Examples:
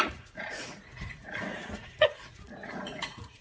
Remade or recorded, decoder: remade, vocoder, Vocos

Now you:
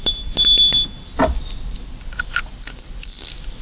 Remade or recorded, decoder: recorded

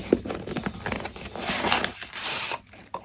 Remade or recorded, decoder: recorded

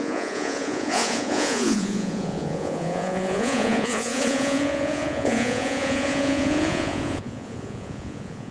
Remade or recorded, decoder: remade, vocoder, Vocos